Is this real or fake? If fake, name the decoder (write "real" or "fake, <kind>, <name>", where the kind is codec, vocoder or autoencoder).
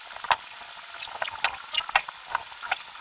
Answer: real